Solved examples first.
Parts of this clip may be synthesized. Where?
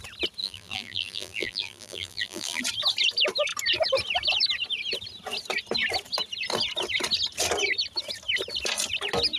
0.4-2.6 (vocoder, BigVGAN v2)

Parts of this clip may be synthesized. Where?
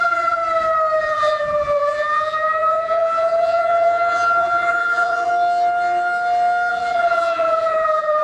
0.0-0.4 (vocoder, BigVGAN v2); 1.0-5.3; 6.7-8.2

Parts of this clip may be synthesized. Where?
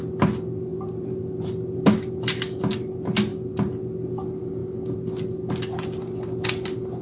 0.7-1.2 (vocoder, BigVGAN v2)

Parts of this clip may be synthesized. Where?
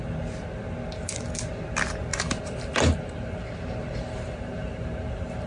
2.1-5.5 (vocoder, BigVGAN v2)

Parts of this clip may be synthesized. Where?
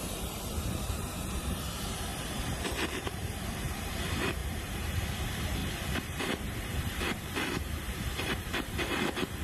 0.0-9.4 (vocoder, BigVGAN v2)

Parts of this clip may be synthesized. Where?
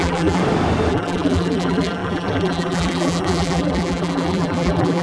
0.0-0.4 (vocoder, BigVGAN v2); 0.9-5.0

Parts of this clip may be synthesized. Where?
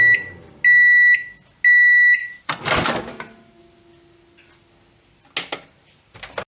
2.2-2.9 (vocoder, BigVGAN v2)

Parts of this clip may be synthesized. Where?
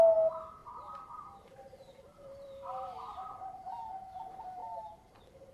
0.6-3.9 (vocoder, BigVGAN v2); 4.6-5.5